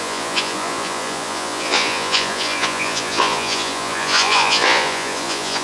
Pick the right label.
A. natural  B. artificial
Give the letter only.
B